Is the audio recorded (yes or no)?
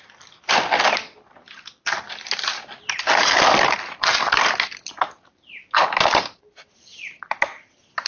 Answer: yes